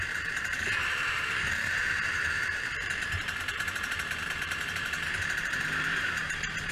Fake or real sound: fake